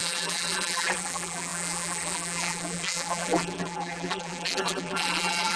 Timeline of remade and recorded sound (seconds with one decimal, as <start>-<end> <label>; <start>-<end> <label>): 0.0-5.6 remade